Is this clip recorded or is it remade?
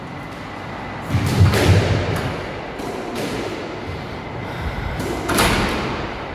recorded